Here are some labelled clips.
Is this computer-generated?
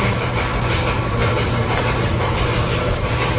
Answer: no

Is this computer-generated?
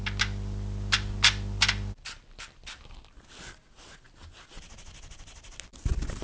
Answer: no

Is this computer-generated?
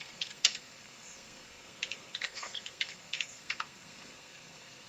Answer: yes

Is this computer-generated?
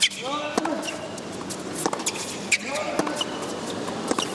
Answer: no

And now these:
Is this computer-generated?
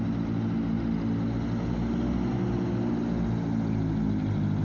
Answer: no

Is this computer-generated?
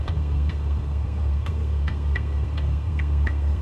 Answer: yes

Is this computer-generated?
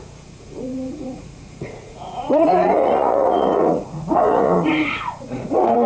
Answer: yes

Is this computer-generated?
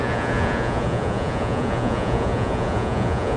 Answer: yes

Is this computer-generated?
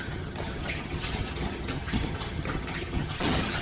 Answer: yes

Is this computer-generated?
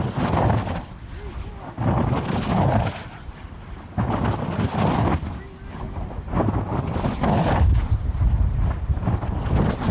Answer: no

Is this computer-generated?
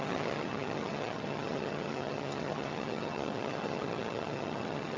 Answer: yes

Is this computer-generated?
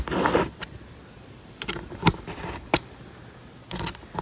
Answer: no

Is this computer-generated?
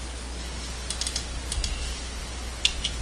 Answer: no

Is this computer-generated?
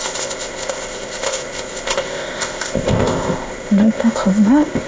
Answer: yes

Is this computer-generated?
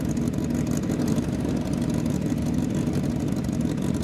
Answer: no